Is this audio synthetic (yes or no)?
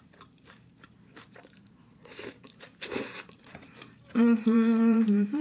yes